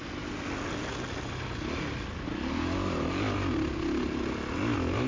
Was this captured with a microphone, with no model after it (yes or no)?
yes